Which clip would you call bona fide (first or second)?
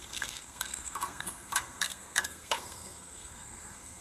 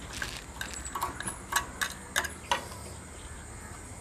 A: second